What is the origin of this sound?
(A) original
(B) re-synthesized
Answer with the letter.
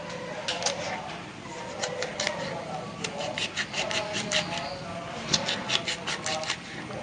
A